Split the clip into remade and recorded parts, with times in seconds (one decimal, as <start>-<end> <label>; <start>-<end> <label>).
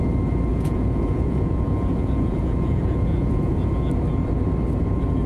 0.0-0.5 recorded; 0.5-3.7 remade; 3.7-5.3 recorded